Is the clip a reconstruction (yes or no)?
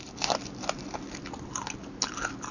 no